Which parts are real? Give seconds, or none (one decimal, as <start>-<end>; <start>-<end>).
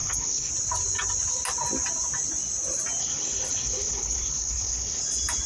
0.5-3.0; 5.0-5.5